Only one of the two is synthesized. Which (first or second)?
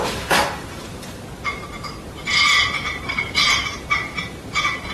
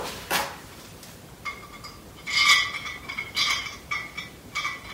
first